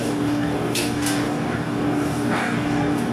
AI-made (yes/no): yes